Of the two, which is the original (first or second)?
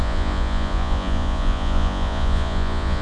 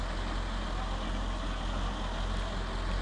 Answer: second